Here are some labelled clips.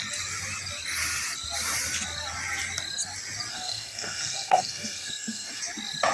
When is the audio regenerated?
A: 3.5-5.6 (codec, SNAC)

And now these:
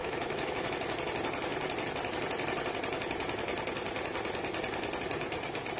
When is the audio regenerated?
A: 0.0-0.7 (autoencoder, DAC-VAE)

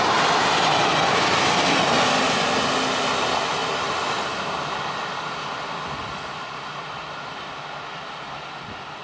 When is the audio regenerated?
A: none

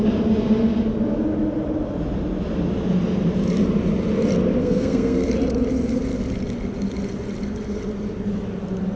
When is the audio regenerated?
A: 4.6-5.3 (codec, SNAC)

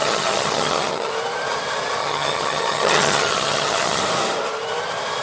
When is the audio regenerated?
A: 0.0-1.1 (vocoder, HiFi-GAN); 2.0-4.0